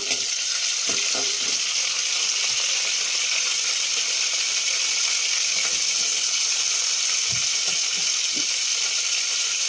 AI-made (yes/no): no